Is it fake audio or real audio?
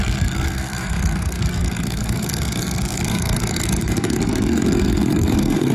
fake